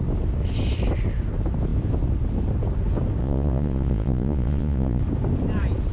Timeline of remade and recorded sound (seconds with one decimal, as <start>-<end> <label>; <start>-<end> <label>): 0.0-3.2 recorded; 3.2-5.0 remade; 5.0-5.9 recorded